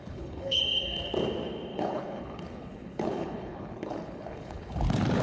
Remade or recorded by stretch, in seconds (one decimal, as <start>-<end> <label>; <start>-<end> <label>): 0.0-0.6 remade; 0.6-1.7 recorded; 1.7-4.8 remade; 4.8-5.2 recorded